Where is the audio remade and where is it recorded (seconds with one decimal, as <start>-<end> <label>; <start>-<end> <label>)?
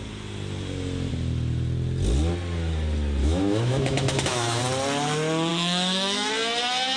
0.0-3.2 recorded; 3.2-4.6 remade; 4.6-5.5 recorded; 5.5-6.3 remade; 6.3-7.0 recorded